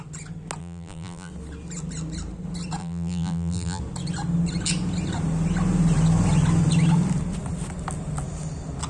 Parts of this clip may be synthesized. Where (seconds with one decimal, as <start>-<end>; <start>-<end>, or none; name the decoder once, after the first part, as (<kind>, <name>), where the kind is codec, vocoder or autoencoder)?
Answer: 0.6-1.3 (vocoder, BigVGAN v2); 2.8-3.8